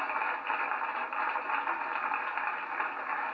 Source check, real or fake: real